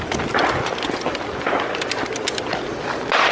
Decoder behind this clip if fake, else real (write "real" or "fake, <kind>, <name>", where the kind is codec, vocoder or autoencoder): real